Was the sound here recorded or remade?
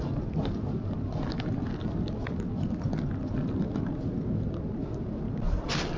recorded